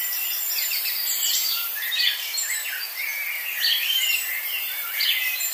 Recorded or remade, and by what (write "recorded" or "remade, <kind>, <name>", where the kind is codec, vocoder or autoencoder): remade, vocoder, BigVGAN v2